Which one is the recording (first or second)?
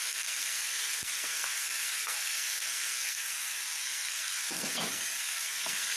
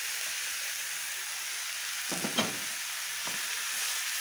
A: second